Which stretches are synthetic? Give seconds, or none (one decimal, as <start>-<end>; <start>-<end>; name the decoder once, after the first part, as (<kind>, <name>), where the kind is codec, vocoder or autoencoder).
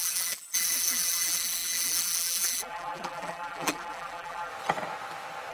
0.0-4.5 (vocoder, BigVGAN v2)